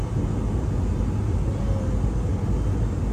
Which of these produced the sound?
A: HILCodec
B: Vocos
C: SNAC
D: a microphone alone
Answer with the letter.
D